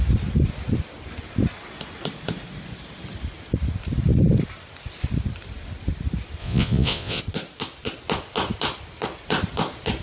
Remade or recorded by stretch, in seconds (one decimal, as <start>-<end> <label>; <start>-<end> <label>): 0.0-6.4 recorded; 6.4-7.2 remade; 7.2-10.0 recorded

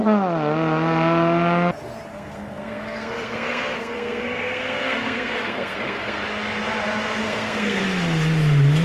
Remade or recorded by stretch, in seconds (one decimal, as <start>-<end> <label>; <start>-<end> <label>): 0.0-2.1 recorded; 2.1-6.2 remade; 6.2-7.2 recorded; 7.2-7.8 remade; 7.8-8.8 recorded

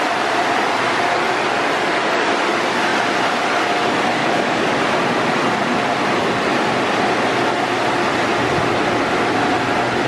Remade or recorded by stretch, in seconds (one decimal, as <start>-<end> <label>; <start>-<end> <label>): 0.0-4.2 recorded; 4.2-4.8 remade; 4.8-10.1 recorded

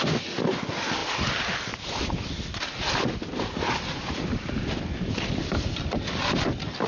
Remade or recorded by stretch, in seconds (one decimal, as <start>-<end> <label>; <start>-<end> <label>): 0.0-6.9 recorded

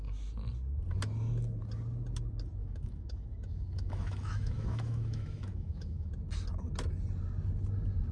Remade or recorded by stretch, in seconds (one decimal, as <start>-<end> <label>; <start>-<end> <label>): 0.0-2.6 recorded; 2.6-6.1 remade; 6.1-8.1 recorded

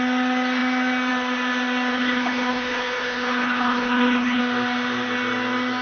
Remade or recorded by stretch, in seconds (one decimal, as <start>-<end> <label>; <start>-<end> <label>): 0.0-1.9 recorded; 1.9-4.4 remade; 4.4-5.8 recorded

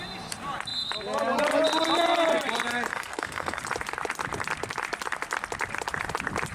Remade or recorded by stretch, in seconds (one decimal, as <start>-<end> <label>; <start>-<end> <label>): 0.0-2.9 recorded; 2.9-3.6 remade; 3.6-6.5 recorded